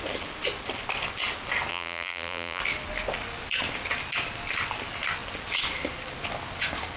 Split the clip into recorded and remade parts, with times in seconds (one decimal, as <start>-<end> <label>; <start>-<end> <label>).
0.0-1.7 recorded; 1.7-2.6 remade; 2.6-7.0 recorded